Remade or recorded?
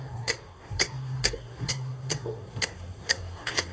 remade